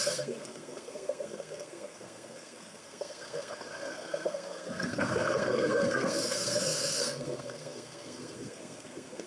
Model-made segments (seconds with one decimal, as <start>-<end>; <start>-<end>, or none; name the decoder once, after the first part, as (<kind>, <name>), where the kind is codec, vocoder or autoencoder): 0.0-9.3 (codec, SNAC)